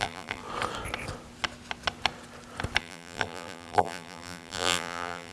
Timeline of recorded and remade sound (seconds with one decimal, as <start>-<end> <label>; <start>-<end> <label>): 0.0-0.4 remade; 0.4-2.8 recorded; 2.8-5.3 remade